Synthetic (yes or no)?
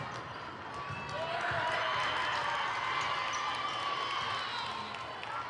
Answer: no